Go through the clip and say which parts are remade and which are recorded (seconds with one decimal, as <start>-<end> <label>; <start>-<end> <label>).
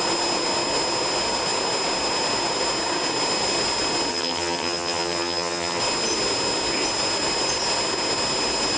0.0-4.1 recorded; 4.1-5.8 remade; 5.8-8.8 recorded